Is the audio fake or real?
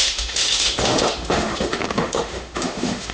fake